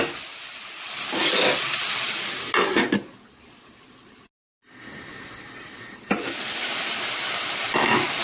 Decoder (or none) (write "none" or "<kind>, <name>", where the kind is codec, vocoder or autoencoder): none